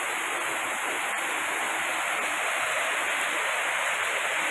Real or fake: real